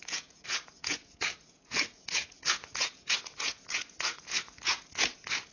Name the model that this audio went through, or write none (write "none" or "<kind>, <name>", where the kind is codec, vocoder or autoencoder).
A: vocoder, Vocos